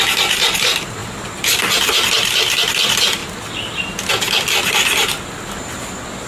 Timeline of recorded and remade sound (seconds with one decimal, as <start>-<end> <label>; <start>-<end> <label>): 0.0-6.3 recorded